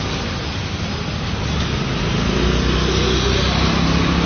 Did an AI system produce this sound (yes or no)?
no